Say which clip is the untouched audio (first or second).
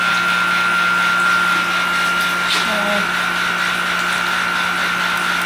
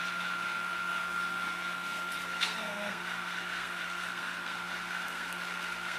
first